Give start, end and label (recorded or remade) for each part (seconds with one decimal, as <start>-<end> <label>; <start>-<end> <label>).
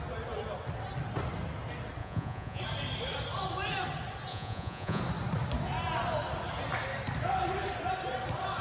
0.0-2.0 recorded; 2.0-2.6 remade; 2.6-4.3 recorded; 4.3-5.0 remade; 5.0-8.6 recorded